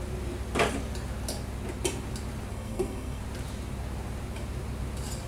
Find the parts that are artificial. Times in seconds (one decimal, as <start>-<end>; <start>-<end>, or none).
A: 2.5-3.2